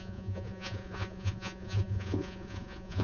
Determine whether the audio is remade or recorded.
remade